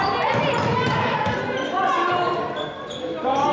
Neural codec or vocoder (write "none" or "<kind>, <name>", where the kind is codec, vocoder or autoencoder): none